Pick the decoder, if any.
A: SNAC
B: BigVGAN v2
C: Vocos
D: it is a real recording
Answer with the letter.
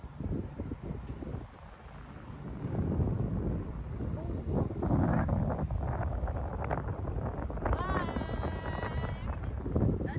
D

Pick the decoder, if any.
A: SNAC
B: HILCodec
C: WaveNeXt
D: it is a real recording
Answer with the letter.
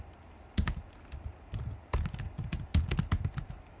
D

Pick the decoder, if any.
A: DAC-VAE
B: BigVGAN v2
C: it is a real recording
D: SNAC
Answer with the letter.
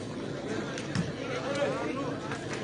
C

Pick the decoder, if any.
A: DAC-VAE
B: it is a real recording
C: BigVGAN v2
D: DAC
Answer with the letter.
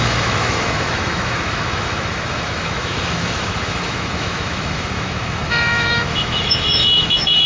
A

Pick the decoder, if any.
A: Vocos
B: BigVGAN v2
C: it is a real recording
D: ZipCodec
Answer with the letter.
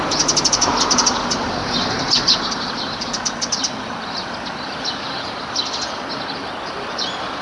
C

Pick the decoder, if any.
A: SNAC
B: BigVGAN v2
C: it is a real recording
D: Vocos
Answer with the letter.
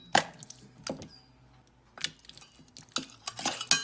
C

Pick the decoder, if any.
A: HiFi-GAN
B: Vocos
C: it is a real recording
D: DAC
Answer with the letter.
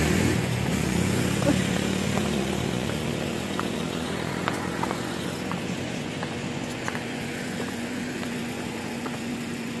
B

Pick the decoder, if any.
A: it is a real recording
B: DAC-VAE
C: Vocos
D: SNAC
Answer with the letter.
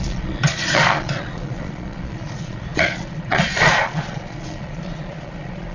C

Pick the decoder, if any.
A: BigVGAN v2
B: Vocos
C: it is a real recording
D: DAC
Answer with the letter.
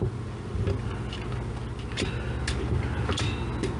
C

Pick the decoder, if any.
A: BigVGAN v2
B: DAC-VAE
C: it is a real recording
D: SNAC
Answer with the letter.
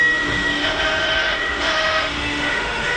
B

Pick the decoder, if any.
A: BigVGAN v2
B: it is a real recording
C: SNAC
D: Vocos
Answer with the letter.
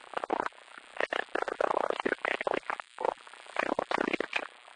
B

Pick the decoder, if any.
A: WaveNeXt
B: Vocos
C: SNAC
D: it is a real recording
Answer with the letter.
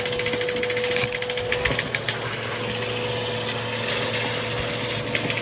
D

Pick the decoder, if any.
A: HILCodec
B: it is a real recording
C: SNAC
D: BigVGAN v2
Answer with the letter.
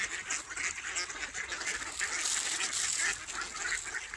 B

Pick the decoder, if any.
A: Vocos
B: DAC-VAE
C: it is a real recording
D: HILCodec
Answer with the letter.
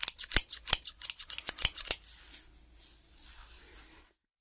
C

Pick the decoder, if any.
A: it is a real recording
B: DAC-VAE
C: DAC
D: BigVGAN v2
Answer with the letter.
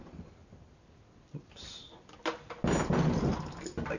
A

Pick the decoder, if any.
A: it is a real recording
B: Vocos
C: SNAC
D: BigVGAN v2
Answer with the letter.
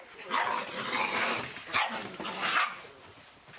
A